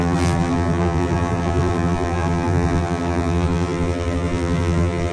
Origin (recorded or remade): remade